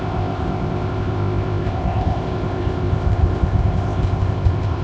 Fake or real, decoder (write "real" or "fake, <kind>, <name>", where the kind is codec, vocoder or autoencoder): fake, codec, ZipCodec